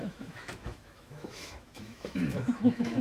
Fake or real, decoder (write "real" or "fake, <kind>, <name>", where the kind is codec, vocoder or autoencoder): fake, autoencoder, DAC-VAE